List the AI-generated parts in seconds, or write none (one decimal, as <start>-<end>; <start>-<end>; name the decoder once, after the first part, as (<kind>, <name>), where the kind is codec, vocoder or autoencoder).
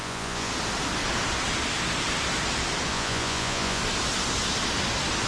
0.0-0.5 (vocoder, Vocos); 2.9-3.8